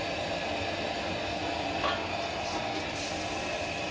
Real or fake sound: real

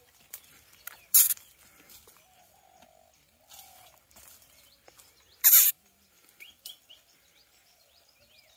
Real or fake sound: fake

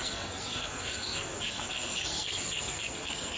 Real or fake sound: fake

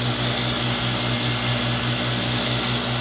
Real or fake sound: real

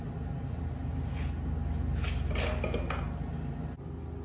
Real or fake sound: real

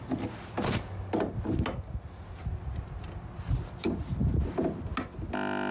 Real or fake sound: real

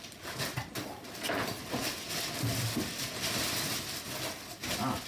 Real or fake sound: real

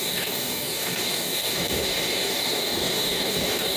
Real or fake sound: fake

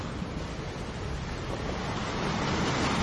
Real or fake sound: real